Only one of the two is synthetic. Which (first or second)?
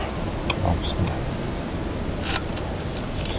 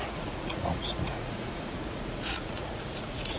second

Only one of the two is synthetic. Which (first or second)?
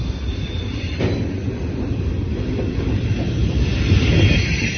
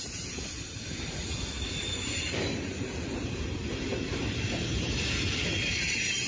second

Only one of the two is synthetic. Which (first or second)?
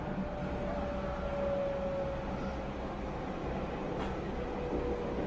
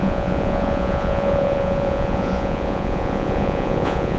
second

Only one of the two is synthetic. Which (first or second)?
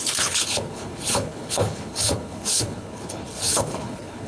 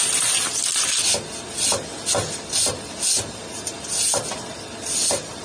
first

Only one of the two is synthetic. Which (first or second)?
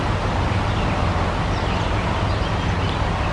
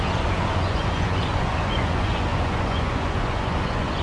second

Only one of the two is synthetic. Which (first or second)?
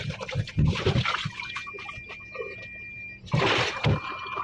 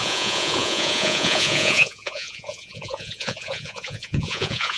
second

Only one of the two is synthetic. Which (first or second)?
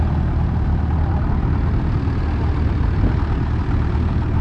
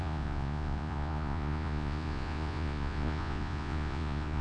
second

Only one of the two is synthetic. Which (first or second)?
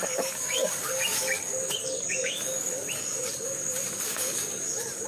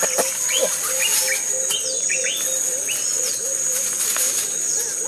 first